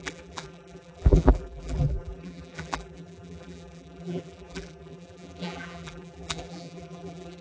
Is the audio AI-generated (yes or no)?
yes